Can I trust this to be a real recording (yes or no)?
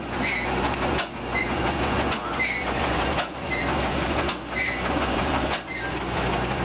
no